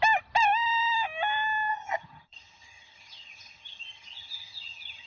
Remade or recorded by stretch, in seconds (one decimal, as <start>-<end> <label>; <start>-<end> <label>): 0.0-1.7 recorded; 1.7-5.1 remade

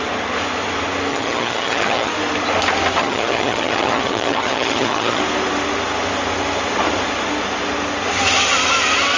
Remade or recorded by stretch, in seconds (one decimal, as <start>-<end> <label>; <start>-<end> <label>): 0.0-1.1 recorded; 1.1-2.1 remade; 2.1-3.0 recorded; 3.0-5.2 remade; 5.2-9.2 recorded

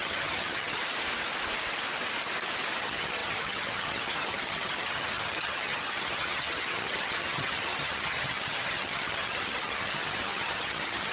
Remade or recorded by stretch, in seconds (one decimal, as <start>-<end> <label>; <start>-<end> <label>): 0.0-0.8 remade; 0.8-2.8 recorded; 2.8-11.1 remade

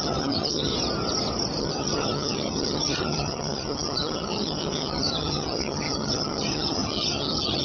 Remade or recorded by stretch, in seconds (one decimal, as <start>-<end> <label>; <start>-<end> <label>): 0.0-0.7 remade; 0.7-1.6 recorded; 1.6-7.6 remade

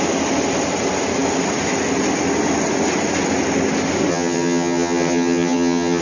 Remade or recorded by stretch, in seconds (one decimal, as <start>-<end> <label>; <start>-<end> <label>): 0.0-4.1 recorded; 4.1-6.0 remade

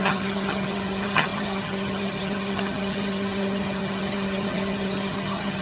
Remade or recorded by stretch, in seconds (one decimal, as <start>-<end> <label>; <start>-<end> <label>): 0.0-5.6 remade

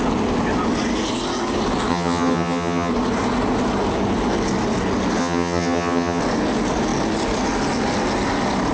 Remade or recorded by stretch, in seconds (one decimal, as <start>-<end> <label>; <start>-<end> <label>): 0.0-1.9 recorded; 1.9-2.9 remade; 2.9-5.2 recorded; 5.2-6.2 remade; 6.2-8.7 recorded